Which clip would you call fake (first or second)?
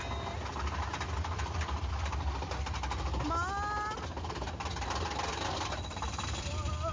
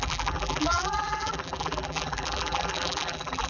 second